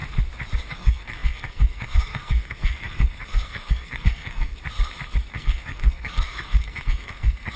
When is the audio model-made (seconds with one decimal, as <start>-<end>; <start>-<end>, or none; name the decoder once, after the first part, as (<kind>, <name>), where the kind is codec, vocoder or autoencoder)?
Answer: 0.7-4.5 (codec, SNAC); 5.3-7.6